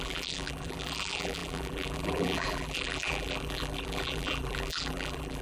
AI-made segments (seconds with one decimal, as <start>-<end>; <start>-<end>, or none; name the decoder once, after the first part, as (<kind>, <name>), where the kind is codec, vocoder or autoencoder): 0.0-5.4 (vocoder, BigVGAN v2)